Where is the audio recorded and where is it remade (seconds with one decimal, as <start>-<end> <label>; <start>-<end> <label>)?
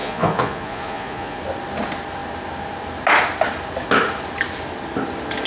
0.0-1.4 remade; 1.4-5.5 recorded